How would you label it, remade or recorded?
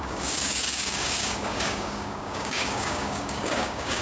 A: remade